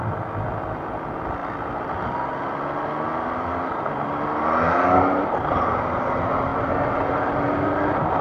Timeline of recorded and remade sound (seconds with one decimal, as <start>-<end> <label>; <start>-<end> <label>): 0.0-8.2 recorded